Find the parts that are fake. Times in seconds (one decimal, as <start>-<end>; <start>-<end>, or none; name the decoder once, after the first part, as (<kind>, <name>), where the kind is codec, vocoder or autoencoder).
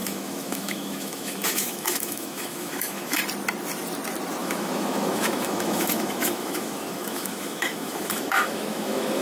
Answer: 0.0-3.2 (autoencoder, DAC-VAE); 4.4-9.2